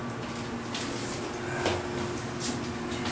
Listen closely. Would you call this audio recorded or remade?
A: recorded